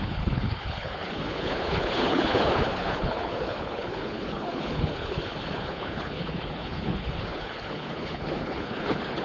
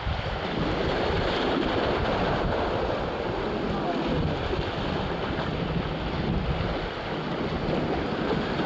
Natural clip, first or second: second